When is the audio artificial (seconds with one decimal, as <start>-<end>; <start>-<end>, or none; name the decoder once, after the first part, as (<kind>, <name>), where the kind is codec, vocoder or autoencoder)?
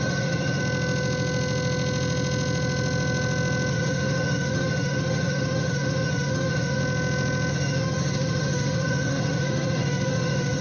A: 0.0-0.6 (autoencoder, DAC-VAE); 3.7-6.8; 7.5-10.6